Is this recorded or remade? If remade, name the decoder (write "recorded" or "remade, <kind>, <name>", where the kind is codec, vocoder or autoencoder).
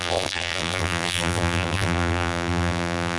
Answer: remade, vocoder, BigVGAN v2